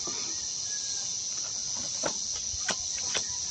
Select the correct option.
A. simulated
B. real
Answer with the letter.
B